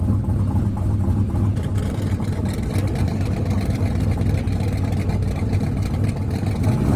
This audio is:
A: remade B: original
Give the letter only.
B